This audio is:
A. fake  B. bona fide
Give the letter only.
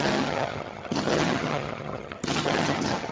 A